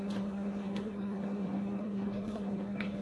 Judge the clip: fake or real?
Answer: fake